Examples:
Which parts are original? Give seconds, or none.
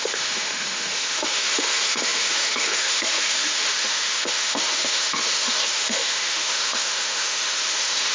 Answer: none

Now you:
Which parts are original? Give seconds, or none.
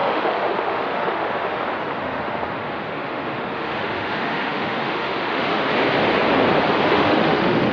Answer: 1.6-2.0; 5.7-6.9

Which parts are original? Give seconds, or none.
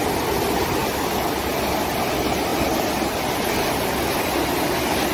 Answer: 0.0-5.1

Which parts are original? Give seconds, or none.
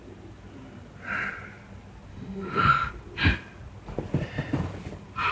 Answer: 0.0-2.1; 2.9-5.3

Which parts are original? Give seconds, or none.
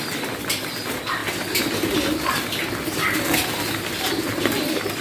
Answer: 0.0-5.0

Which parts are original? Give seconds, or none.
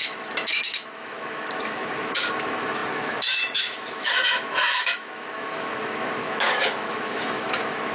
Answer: none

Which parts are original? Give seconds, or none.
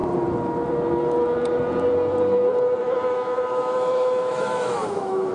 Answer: 0.0-2.8